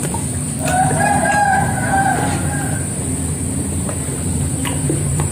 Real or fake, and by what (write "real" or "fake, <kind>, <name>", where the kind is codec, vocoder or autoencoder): fake, vocoder, BigVGAN v2